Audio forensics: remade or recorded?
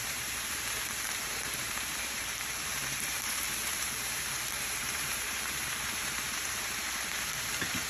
remade